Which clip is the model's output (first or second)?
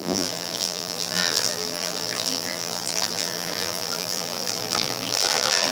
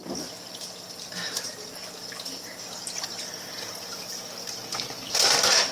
first